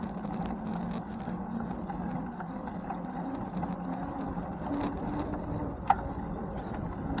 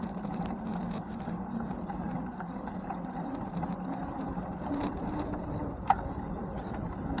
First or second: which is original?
first